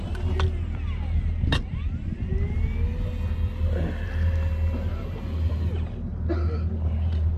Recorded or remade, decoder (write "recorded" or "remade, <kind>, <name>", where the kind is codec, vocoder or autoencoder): recorded